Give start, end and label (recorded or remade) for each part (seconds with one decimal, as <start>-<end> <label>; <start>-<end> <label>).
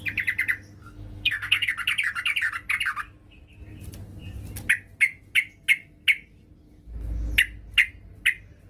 0.0-0.8 recorded; 0.8-1.7 remade; 1.7-8.7 recorded